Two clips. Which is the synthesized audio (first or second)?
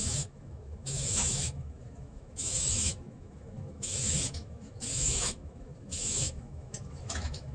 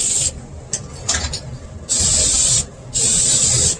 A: first